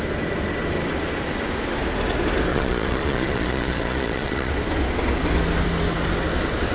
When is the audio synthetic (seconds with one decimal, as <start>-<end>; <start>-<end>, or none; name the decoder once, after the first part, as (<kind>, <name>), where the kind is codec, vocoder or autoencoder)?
2.5-4.5 (vocoder, Vocos)